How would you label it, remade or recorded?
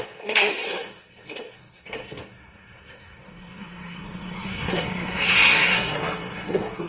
remade